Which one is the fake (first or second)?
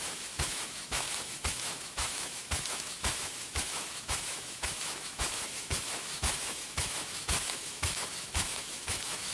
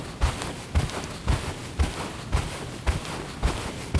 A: first